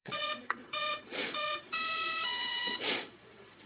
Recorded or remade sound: remade